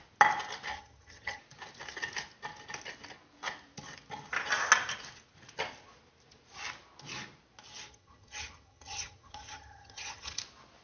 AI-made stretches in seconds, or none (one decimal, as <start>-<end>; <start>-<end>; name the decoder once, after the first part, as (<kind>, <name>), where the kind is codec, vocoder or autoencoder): 0.7-1.4 (vocoder, HiFi-GAN); 7.9-10.4